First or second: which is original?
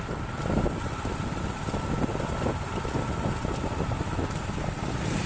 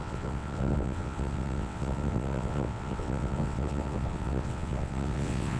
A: first